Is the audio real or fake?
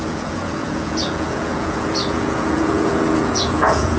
fake